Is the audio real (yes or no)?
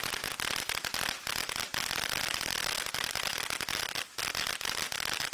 yes